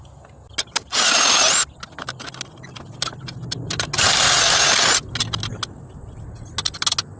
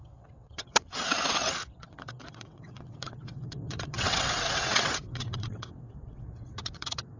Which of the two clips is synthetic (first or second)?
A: second